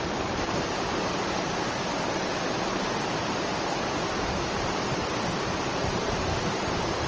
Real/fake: fake